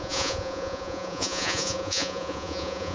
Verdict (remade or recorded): remade